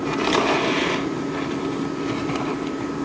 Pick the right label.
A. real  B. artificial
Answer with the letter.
A